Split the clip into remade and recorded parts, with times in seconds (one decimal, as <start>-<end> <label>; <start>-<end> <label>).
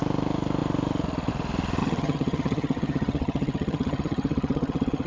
0.0-1.8 recorded; 1.8-5.1 remade